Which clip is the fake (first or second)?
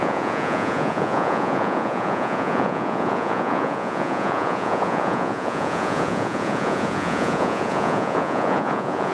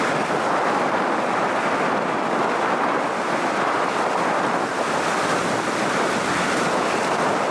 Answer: first